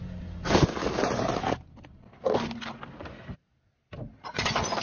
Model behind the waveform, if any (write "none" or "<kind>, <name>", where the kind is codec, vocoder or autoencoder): none